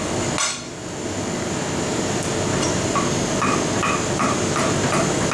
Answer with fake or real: real